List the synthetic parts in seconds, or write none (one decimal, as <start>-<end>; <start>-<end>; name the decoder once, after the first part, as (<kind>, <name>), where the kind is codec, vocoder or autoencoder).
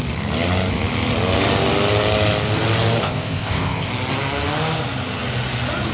3.0-3.9 (codec, ZipCodec)